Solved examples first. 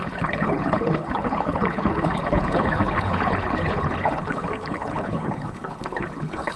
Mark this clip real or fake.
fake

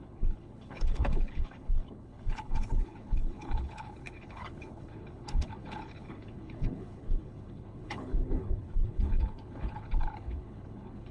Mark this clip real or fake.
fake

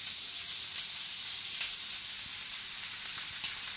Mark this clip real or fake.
real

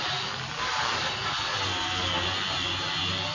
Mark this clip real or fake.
real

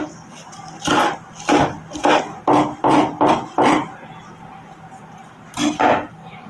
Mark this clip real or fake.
real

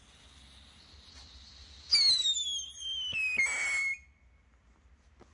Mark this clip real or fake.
real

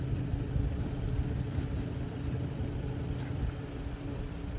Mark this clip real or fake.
real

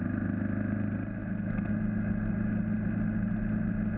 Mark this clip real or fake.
real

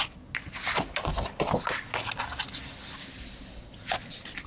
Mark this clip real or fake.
real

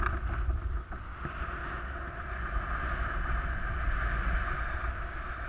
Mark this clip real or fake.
real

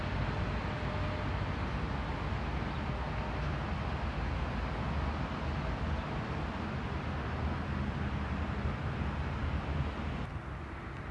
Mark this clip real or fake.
real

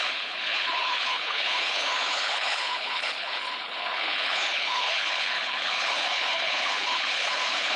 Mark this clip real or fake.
fake